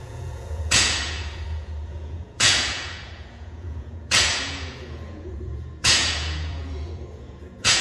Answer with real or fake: fake